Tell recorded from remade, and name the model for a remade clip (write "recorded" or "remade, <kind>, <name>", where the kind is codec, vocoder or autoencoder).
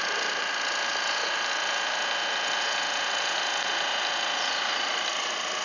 recorded